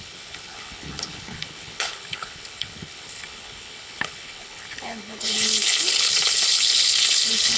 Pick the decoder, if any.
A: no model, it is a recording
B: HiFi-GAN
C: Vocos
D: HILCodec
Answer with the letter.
D